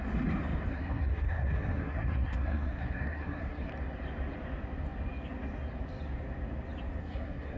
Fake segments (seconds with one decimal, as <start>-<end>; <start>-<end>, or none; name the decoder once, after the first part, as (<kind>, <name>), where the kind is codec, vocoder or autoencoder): 0.7-3.7 (codec, SNAC); 7.0-7.6